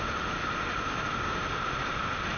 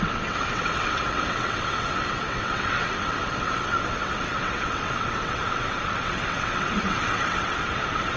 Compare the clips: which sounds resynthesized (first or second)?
second